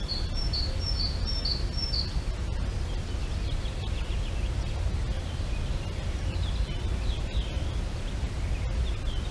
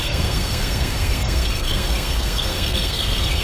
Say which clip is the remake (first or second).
second